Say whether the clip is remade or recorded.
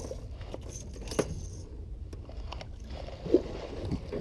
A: recorded